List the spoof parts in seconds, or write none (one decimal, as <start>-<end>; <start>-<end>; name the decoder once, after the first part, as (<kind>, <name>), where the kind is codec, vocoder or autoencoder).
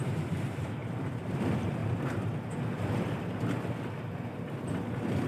0.0-1.8 (vocoder, BigVGAN v2)